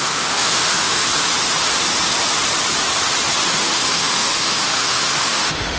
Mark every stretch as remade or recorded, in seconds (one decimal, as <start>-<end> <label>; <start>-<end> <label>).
0.0-1.1 remade; 1.1-3.5 recorded; 3.5-5.8 remade